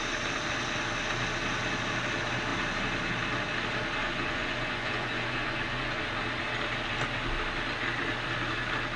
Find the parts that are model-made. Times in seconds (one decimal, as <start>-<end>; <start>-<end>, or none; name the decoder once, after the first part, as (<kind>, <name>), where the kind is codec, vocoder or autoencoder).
4.0-6.0 (vocoder, Vocos)